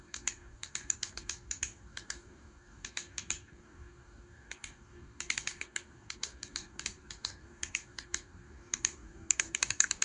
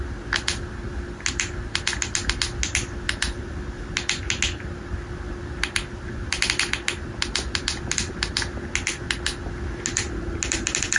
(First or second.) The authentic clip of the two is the second